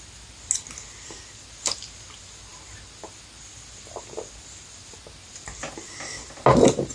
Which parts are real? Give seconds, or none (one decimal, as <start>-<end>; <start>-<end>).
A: 0.0-6.9